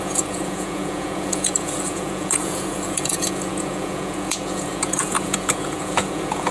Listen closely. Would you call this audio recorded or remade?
remade